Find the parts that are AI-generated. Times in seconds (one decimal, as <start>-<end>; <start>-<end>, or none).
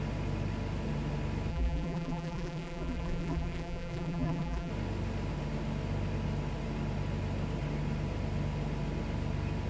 1.5-4.7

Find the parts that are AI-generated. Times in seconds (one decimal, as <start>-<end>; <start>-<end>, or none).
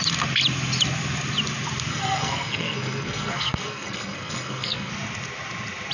1.9-4.9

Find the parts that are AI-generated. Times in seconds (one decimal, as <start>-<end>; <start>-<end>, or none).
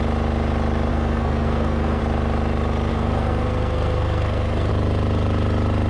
0.9-2.0; 2.9-4.7